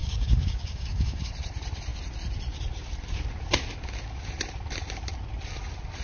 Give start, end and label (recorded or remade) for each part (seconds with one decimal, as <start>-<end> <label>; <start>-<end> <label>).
0.0-1.3 remade; 1.3-6.0 recorded